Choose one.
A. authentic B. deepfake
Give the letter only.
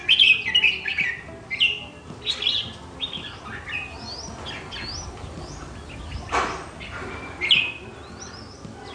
A